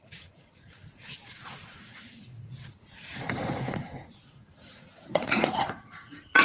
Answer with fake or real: fake